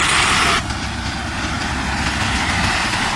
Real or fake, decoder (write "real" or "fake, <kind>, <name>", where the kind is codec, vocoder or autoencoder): real